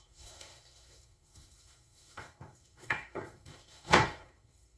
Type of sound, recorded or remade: remade